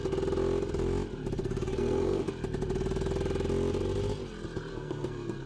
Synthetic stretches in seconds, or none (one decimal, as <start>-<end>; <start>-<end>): 1.4-2.3; 4.7-5.5